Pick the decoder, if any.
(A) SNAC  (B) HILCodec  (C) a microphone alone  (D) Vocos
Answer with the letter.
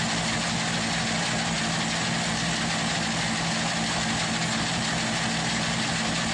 C